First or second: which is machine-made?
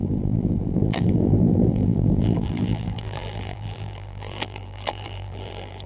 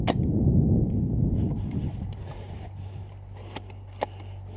first